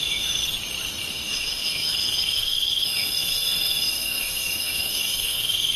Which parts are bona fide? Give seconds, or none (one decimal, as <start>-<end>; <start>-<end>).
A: 0.4-1.1